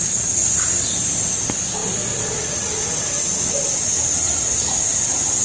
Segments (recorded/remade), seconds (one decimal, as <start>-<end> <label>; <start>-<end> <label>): 0.0-5.4 recorded